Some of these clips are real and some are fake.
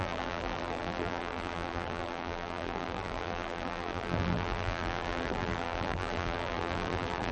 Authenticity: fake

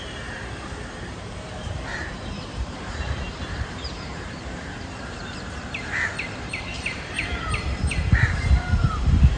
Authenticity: fake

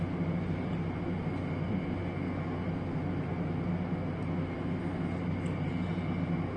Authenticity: real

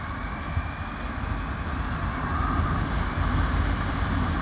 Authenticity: real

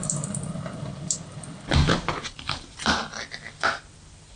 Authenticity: fake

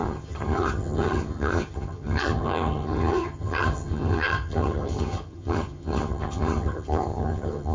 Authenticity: fake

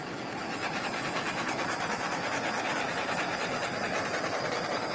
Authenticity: real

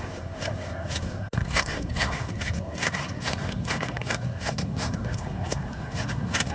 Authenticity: fake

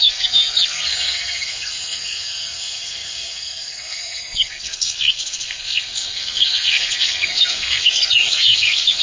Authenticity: fake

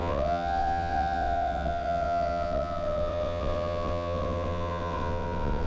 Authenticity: fake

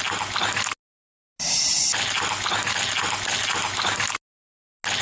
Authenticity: real